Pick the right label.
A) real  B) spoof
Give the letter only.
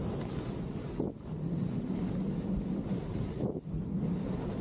A